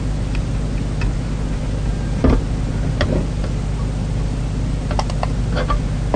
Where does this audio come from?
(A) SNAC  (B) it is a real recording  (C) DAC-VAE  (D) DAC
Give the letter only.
B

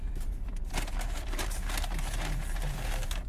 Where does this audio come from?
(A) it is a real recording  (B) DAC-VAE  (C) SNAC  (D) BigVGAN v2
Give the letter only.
D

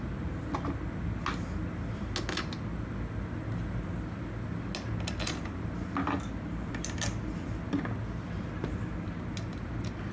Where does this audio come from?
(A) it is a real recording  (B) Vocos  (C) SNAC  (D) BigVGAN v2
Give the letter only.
A